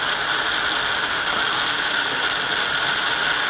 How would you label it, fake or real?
real